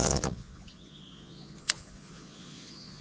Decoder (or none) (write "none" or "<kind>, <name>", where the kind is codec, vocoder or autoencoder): vocoder, Vocos